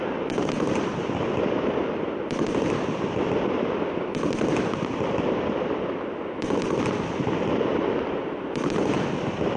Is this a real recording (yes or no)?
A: no